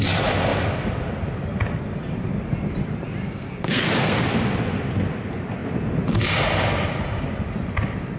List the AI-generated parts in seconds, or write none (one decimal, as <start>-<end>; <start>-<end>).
3.2-4.2